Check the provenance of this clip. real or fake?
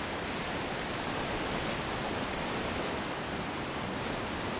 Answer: real